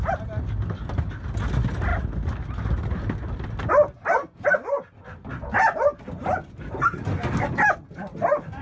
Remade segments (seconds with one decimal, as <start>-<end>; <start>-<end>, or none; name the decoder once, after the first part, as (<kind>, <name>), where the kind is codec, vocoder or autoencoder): none